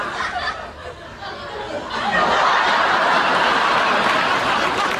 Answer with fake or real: real